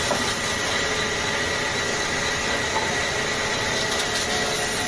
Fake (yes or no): no